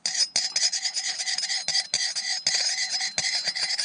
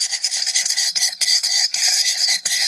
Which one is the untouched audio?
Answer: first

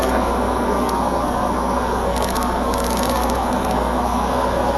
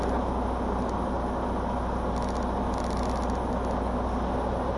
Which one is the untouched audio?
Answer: second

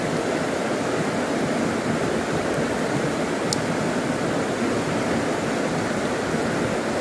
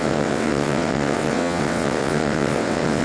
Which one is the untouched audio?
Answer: first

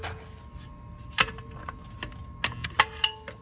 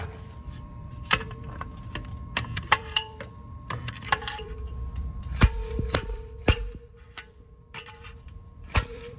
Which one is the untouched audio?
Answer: first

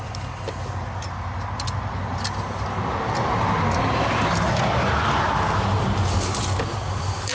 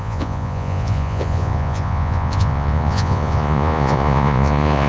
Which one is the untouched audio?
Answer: first